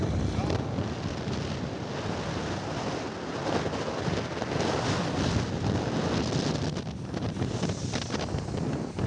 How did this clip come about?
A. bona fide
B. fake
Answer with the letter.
A